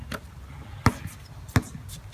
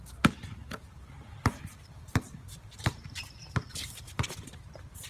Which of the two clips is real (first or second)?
first